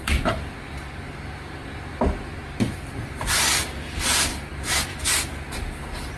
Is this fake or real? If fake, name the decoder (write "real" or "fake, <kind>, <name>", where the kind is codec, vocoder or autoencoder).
fake, vocoder, BigVGAN v2